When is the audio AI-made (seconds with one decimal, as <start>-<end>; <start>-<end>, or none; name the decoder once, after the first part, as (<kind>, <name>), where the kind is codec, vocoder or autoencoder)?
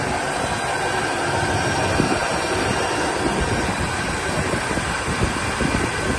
none